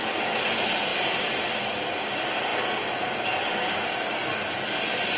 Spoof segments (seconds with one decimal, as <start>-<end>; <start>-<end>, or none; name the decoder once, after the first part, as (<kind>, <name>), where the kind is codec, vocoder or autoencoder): none